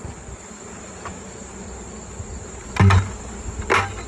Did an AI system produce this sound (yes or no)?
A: no